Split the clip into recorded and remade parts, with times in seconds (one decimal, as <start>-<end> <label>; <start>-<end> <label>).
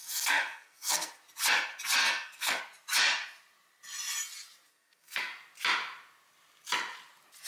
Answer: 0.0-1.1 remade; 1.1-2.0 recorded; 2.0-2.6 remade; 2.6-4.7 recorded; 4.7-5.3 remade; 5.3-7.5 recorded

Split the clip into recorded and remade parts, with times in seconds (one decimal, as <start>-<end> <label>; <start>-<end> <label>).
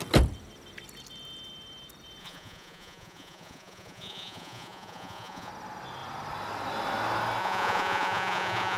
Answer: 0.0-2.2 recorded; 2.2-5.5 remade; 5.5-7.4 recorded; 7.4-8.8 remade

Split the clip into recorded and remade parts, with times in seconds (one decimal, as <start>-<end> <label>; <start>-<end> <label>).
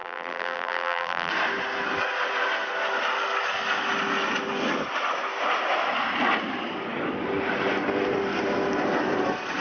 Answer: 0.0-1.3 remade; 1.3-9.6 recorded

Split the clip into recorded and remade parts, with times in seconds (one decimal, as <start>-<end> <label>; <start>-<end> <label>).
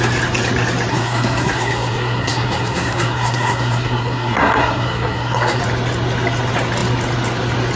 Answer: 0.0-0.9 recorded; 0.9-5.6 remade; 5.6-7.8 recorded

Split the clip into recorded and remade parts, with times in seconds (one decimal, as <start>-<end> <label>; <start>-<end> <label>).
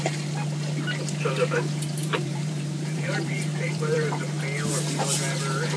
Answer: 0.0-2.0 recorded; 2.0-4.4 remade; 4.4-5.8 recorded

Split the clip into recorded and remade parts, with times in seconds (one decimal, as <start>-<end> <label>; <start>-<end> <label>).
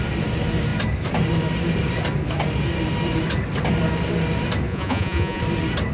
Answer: 0.0-4.7 recorded; 4.7-5.4 remade; 5.4-5.9 recorded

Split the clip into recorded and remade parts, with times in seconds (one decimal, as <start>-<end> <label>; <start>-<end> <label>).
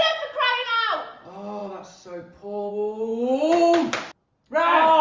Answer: 0.0-1.6 recorded; 1.6-2.7 remade; 2.7-5.0 recorded